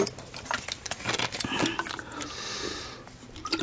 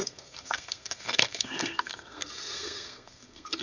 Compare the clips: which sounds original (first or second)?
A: first